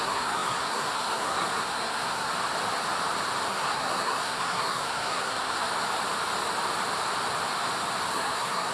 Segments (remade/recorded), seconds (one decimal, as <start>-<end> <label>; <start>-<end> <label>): 0.0-2.3 remade; 2.3-3.5 recorded; 3.5-5.7 remade; 5.7-8.1 recorded; 8.1-8.7 remade